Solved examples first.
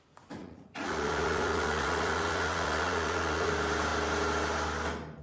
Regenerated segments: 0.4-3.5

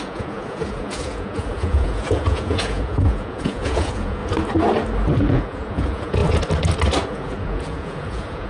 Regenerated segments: 0.0-4.2; 5.2-6.2; 7.1-8.5

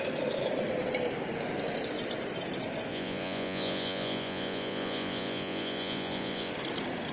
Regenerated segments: 2.9-6.5

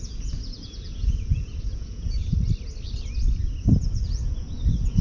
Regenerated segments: 0.0-2.2; 3.8-5.0

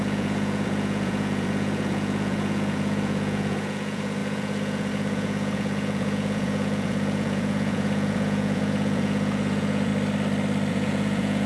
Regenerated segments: 0.0-9.9; 10.7-11.5

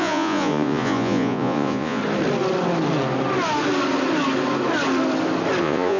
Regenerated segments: 0.0-2.0; 5.6-6.0

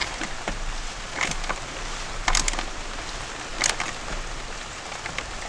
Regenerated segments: none

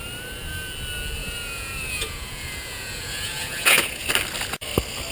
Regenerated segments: 1.2-4.1